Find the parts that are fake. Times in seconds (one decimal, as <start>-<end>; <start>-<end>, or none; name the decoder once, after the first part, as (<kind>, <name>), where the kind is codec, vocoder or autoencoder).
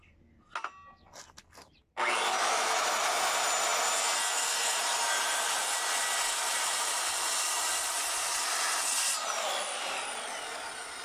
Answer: none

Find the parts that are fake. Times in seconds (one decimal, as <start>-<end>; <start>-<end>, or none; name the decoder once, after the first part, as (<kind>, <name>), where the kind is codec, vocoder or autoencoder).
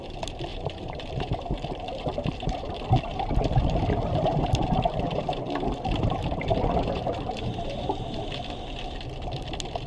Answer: 0.5-2.7 (vocoder, BigVGAN v2); 3.1-8.2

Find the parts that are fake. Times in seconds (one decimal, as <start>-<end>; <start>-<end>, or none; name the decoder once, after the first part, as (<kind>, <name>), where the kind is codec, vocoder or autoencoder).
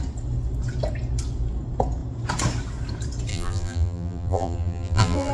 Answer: 3.3-5.3 (vocoder, BigVGAN v2)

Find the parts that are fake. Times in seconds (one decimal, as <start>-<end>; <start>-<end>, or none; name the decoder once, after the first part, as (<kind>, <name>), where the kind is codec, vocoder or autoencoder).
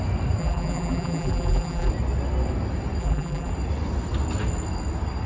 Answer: 0.4-1.9 (vocoder, BigVGAN v2); 3.0-3.5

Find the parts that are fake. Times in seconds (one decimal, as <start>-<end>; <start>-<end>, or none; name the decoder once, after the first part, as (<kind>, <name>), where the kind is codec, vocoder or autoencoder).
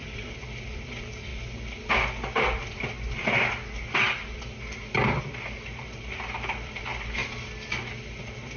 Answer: 0.0-1.3 (vocoder, BigVGAN v2); 5.2-8.6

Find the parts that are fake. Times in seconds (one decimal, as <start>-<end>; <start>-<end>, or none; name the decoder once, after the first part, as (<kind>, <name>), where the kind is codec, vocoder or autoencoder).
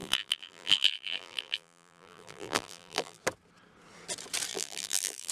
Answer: 0.0-3.2 (vocoder, BigVGAN v2); 4.5-5.3